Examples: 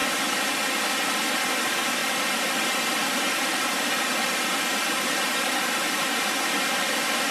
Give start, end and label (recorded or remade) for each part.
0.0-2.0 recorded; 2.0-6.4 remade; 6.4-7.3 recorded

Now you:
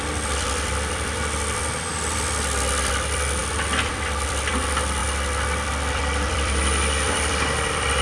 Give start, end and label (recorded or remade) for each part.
0.0-5.0 remade; 5.0-5.7 recorded; 5.7-8.0 remade

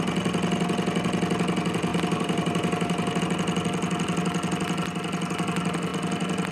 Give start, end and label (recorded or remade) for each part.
0.0-1.9 recorded; 1.9-3.2 remade; 3.2-6.5 recorded

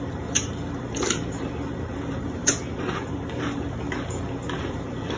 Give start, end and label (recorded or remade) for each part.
0.0-5.2 remade

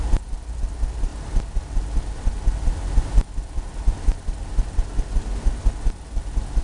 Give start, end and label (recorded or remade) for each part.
0.0-6.6 recorded